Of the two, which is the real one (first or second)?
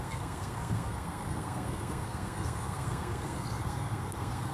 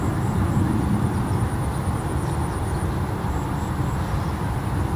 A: second